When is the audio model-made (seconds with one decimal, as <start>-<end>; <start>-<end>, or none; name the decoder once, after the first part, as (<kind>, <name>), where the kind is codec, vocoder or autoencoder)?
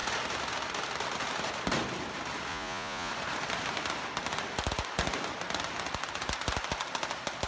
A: 2.5-3.1 (vocoder, Vocos)